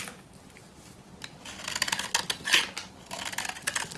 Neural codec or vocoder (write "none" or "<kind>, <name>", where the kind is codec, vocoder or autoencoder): none